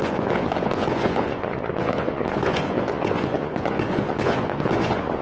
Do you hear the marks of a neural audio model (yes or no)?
yes